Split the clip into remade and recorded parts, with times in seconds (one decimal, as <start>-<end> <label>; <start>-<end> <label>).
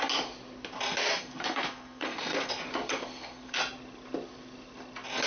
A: 0.0-1.1 recorded; 1.1-2.5 remade; 2.5-2.9 recorded; 2.9-3.6 remade; 3.6-5.3 recorded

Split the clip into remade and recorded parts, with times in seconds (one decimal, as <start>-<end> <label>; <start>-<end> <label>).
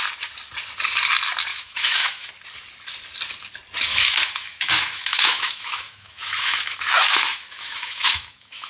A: 0.0-1.5 recorded; 1.5-2.3 remade; 2.3-3.9 recorded; 3.9-8.7 remade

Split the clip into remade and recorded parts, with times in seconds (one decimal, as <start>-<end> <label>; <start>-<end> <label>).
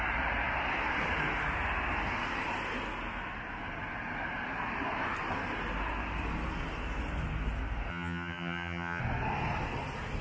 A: 0.0-7.9 recorded; 7.9-9.0 remade; 9.0-10.2 recorded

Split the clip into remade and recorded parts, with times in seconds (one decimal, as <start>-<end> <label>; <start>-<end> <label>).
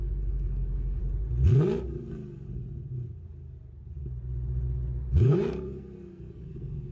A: 0.0-1.0 remade; 1.0-5.1 recorded; 5.1-6.9 remade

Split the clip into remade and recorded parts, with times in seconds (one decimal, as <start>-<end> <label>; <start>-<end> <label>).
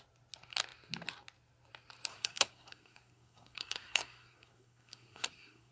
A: 0.0-2.1 recorded; 2.1-5.7 remade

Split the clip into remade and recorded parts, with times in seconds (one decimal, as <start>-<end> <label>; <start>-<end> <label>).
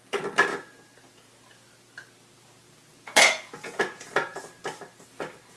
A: 0.0-0.5 recorded; 0.5-1.3 remade; 1.3-2.9 recorded; 2.9-4.4 remade; 4.4-5.6 recorded